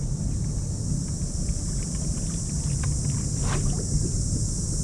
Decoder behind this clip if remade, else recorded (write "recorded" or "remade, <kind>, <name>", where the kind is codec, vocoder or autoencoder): recorded